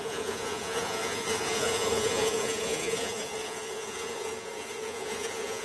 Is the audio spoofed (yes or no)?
yes